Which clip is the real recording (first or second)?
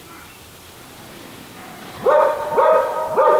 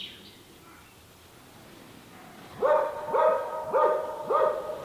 second